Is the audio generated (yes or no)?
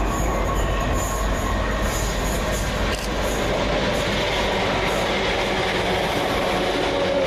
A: no